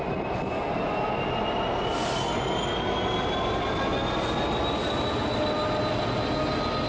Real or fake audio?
real